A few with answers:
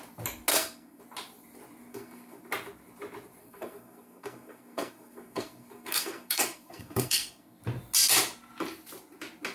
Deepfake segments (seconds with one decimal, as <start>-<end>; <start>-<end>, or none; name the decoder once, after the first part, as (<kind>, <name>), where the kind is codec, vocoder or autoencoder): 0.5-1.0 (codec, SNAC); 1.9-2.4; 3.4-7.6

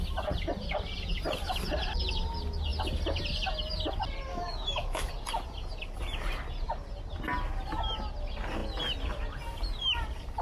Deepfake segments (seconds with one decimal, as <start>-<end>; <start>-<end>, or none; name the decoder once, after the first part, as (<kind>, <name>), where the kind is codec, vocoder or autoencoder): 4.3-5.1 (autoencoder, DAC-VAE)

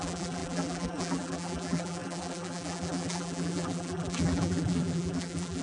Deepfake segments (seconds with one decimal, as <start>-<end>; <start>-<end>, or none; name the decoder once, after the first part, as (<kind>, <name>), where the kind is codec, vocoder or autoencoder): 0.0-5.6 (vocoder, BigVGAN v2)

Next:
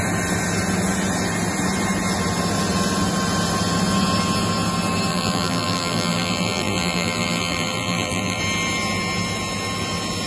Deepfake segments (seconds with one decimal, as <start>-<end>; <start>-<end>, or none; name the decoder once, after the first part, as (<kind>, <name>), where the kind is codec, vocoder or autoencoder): 5.1-8.4 (vocoder, BigVGAN v2)

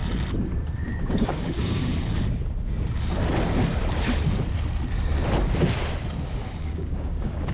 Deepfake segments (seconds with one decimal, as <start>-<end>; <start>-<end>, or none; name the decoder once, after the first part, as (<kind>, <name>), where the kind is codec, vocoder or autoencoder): 1.0-1.9 (codec, DAC); 6.3-7.5

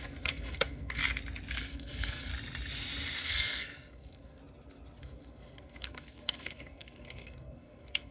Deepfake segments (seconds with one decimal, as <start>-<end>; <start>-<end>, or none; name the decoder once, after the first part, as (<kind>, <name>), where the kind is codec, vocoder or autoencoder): 0.0-1.0 (codec, SNAC); 1.6-2.3; 3.2-4.4; 5.0-8.1

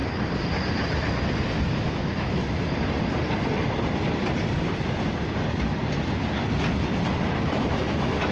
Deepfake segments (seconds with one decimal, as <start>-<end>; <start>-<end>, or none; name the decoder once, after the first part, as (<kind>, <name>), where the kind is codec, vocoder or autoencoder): 1.6-2.4 (autoencoder, DAC-VAE); 7.4-8.3

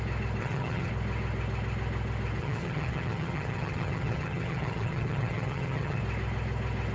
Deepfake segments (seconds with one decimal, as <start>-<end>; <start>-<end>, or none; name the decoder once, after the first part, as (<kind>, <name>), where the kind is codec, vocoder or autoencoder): 0.4-0.9 (vocoder, HiFi-GAN); 2.4-6.0